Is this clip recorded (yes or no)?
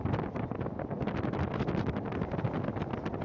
yes